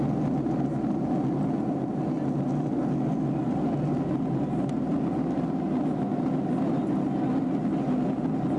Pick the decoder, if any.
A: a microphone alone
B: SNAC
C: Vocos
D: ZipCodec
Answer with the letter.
A